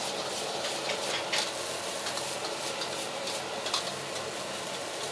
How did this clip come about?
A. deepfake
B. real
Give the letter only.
B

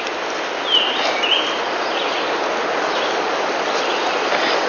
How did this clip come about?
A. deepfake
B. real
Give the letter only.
B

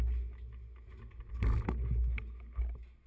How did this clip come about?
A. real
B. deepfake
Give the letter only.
A